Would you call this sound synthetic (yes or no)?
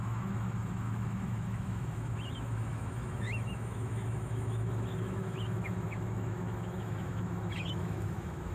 yes